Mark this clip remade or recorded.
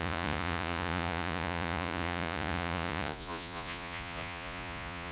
remade